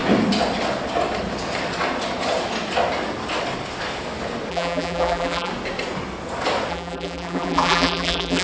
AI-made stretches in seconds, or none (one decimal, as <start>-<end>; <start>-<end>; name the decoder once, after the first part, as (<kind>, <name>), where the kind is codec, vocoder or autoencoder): 4.5-5.5 (vocoder, BigVGAN v2); 6.7-8.4

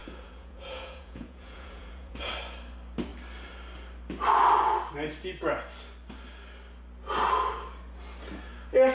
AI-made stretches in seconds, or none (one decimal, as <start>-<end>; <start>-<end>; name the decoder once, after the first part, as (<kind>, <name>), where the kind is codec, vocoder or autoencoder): 0.0-2.3 (vocoder, Vocos)